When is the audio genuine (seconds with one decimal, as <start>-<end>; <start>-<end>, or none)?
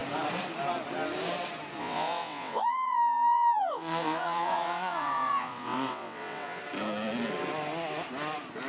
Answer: 0.0-1.8; 6.6-8.7